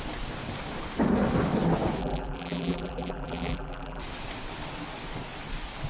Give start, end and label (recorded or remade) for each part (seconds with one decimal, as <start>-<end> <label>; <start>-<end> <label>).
0.0-2.0 recorded; 2.0-4.0 remade; 4.0-5.9 recorded